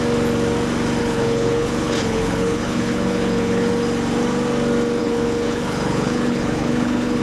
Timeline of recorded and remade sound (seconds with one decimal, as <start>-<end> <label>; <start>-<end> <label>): 0.0-1.0 recorded; 1.0-3.7 remade; 3.7-5.0 recorded; 5.0-7.2 remade